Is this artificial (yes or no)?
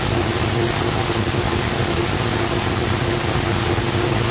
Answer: no